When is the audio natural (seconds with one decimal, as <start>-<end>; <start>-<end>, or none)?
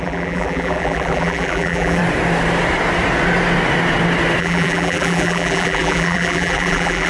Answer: 2.0-4.4